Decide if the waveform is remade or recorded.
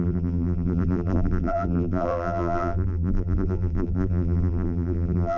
remade